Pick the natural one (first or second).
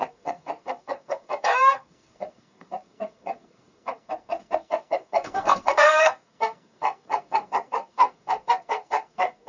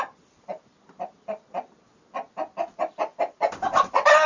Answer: second